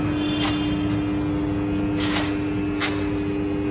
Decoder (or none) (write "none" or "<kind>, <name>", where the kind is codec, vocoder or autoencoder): none